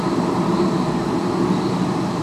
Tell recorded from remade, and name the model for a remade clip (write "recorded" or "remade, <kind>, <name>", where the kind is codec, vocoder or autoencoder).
recorded